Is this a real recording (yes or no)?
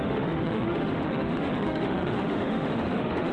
no